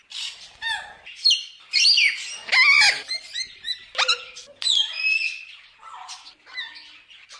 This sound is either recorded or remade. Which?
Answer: recorded